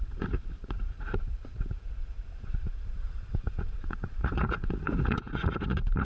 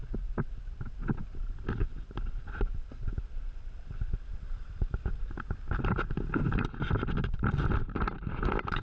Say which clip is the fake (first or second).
first